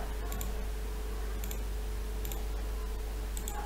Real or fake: real